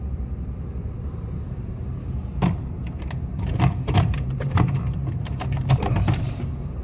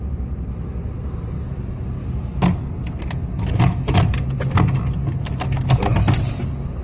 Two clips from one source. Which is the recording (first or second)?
second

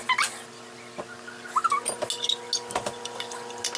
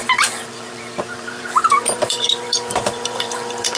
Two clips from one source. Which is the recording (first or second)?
first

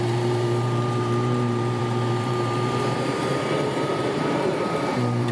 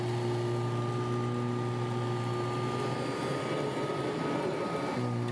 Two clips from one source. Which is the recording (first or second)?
second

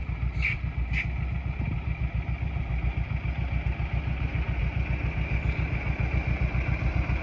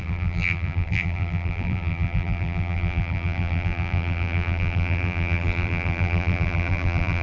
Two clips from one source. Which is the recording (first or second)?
first